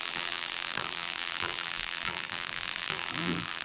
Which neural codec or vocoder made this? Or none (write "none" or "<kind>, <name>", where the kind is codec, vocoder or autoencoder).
vocoder, BigVGAN v2